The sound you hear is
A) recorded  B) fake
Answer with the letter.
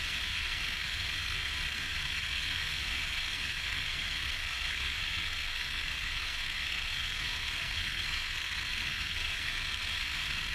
B